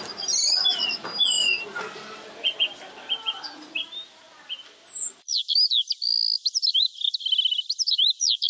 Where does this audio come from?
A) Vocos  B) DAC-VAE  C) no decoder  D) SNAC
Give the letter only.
C